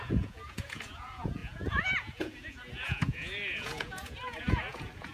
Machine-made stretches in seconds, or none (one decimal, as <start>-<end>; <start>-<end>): 0.0-5.1